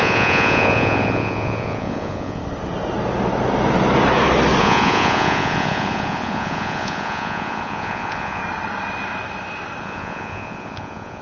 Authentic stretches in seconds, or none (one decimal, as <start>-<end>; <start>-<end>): 2.4-4.6; 8.4-9.8